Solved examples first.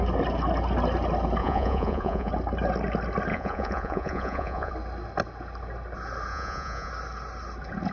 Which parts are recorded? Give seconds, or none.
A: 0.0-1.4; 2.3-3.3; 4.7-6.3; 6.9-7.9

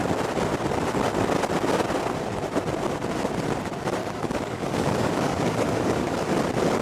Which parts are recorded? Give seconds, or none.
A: 0.0-4.0; 6.3-6.8

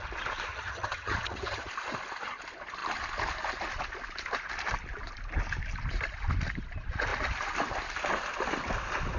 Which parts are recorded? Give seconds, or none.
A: 0.0-0.5; 1.7-9.2

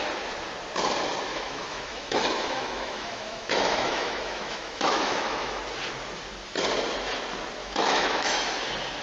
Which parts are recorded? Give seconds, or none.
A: 0.0-1.3; 5.6-7.6; 8.4-9.0

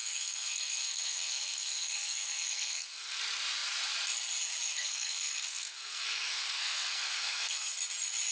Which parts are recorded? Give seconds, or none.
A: 3.2-4.7; 7.7-8.3

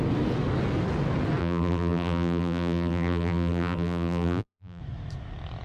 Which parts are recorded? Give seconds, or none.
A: 0.0-1.4; 4.8-5.6